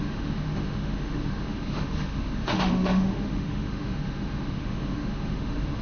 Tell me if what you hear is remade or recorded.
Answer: remade